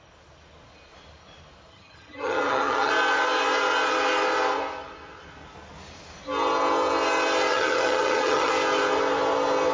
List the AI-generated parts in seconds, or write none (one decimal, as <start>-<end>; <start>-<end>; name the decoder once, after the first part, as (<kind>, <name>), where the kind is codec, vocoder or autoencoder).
1.7-2.9 (vocoder, HiFi-GAN); 7.5-8.5